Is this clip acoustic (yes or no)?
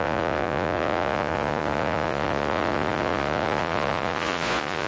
no